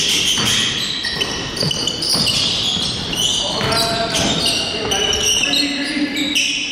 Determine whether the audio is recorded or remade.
recorded